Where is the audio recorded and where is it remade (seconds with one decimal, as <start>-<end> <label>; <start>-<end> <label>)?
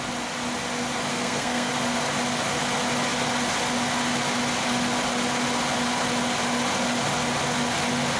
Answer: 0.0-1.1 recorded; 1.1-1.7 remade; 1.7-8.2 recorded